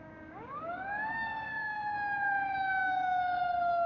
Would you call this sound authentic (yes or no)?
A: no